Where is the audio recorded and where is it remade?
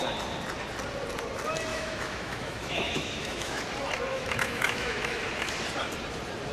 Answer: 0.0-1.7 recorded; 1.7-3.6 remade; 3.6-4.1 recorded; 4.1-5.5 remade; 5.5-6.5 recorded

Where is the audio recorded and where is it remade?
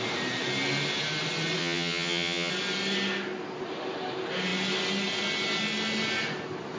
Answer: 0.0-1.6 recorded; 1.6-2.5 remade; 2.5-6.8 recorded